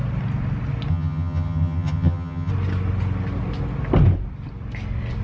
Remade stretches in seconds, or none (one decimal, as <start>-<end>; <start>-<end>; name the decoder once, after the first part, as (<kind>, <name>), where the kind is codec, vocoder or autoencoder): 0.9-2.5 (vocoder, HiFi-GAN)